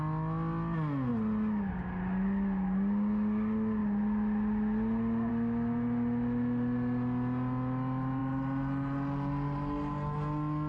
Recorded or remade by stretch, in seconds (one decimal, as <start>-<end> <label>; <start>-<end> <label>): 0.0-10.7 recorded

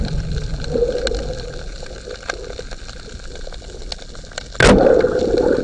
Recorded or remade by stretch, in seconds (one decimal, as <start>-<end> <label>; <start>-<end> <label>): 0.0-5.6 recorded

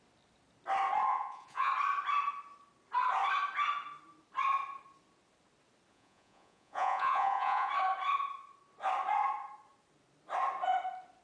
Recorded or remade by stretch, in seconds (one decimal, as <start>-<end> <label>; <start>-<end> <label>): 0.0-1.1 recorded; 1.1-1.7 remade; 1.7-5.9 recorded; 5.9-7.7 remade; 7.7-11.2 recorded